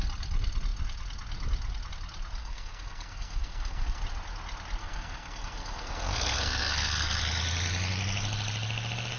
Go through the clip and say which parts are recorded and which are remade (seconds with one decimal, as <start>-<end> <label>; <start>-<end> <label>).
0.0-2.4 recorded; 2.4-4.0 remade; 4.0-4.8 recorded; 4.8-7.2 remade; 7.2-9.2 recorded